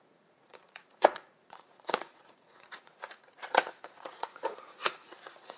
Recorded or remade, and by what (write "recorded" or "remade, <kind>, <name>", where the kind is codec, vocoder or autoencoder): remade, vocoder, Vocos